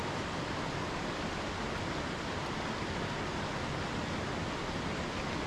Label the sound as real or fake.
real